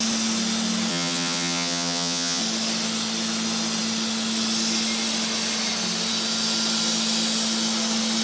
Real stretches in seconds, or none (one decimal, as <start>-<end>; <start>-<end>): 0.0-0.9; 2.4-8.2